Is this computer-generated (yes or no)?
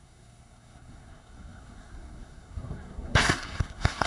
yes